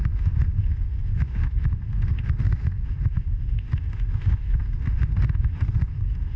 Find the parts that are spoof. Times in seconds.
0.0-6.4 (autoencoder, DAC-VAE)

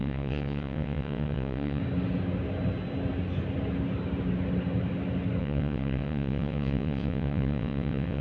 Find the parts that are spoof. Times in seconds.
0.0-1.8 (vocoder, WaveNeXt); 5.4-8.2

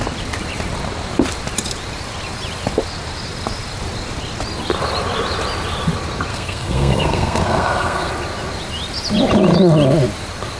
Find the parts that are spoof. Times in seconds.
6.3-8.1 (codec, SNAC)

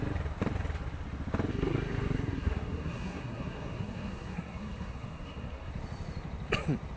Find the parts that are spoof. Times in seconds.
1.5-5.7 (codec, SNAC)

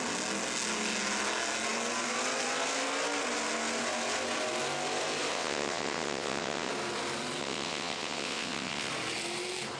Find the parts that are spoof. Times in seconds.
5.3-6.7 (vocoder, WaveNeXt); 7.4-8.9